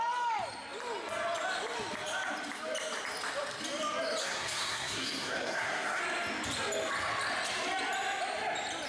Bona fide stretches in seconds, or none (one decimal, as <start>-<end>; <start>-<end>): 0.0-4.2; 6.0-8.9